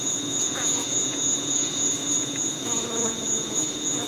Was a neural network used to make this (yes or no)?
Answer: yes